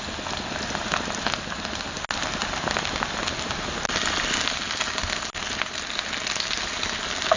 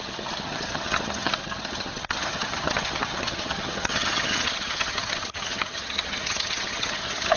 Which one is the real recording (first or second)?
first